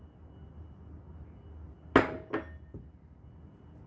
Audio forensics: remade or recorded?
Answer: recorded